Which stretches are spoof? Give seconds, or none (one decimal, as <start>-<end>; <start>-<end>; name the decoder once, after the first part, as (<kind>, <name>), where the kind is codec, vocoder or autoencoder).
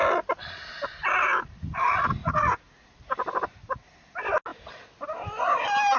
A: 2.2-2.8 (vocoder, Vocos)